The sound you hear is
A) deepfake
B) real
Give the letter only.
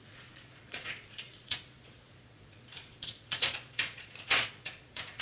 A